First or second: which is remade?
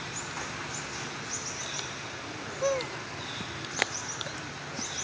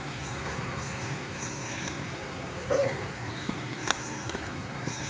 second